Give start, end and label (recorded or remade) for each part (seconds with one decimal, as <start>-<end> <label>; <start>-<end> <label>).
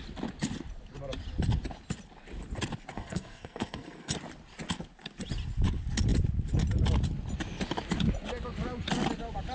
0.0-2.9 recorded; 2.9-4.1 remade; 4.1-9.5 recorded